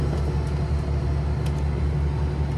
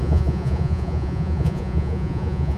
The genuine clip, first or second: first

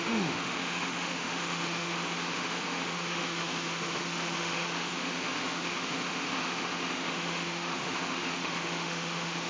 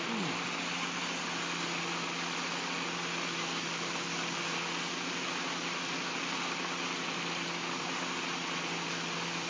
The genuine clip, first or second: second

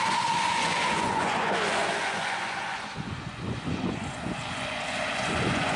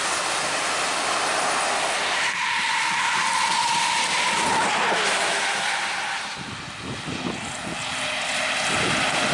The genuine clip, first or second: second